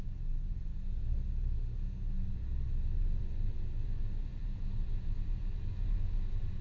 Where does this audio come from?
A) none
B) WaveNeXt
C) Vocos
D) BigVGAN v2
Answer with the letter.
C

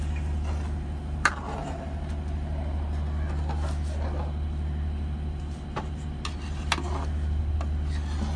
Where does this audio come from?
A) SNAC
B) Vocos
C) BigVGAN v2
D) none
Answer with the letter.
D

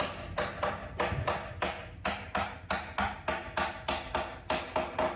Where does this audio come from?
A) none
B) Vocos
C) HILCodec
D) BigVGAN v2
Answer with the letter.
A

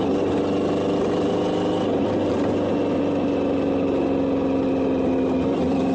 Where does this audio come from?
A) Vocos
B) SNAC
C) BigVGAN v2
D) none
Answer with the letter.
D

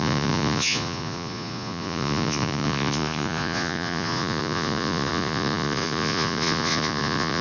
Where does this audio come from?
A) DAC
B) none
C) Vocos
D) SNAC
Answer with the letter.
C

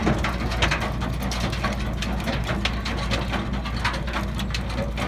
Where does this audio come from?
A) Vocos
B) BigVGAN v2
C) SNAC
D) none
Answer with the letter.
D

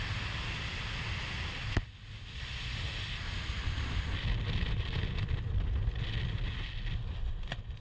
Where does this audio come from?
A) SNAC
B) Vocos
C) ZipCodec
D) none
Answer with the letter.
D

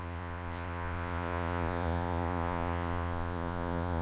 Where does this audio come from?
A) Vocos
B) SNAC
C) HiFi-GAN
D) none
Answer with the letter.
A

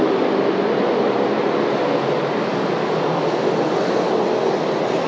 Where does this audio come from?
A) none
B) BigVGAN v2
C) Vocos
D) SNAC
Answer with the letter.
A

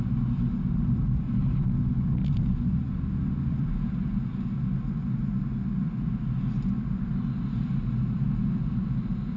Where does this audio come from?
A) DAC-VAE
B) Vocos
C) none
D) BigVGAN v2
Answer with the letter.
C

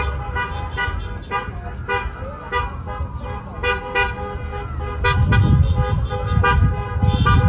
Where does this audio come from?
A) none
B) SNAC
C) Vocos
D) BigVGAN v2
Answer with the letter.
A